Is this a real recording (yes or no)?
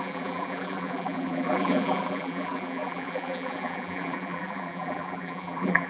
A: no